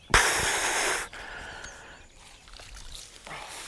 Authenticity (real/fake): real